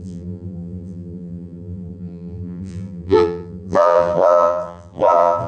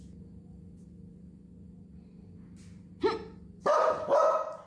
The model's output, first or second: first